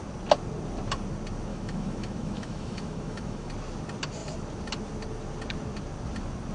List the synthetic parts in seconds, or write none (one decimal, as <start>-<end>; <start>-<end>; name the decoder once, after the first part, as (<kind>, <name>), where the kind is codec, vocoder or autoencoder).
1.5-3.5 (autoencoder, DAC-VAE)